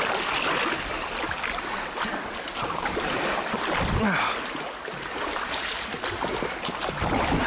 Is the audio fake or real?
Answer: real